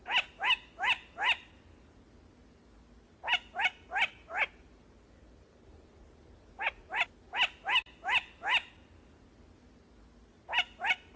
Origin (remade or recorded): recorded